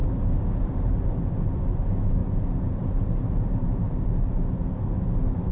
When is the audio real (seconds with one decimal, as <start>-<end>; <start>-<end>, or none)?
0.0-5.5